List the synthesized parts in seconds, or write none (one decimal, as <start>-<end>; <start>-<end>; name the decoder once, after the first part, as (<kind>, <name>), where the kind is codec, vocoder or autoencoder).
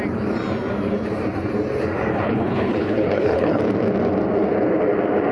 2.1-3.6 (codec, HILCodec)